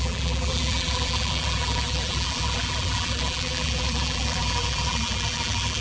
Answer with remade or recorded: remade